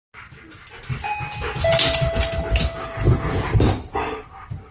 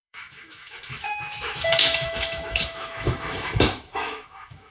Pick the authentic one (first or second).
first